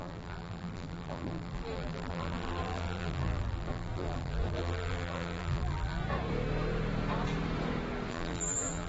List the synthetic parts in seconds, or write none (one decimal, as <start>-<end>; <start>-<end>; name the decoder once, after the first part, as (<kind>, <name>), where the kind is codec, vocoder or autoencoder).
0.0-6.0 (vocoder, BigVGAN v2); 8.1-8.9